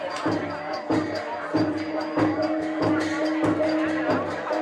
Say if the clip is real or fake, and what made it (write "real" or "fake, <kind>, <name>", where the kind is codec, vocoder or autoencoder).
real